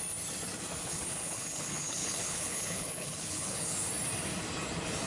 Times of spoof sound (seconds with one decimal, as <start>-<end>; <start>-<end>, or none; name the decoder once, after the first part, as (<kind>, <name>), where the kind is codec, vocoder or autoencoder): 0.8-3.9 (codec, HILCodec)